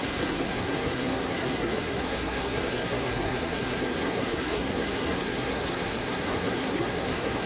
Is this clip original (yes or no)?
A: no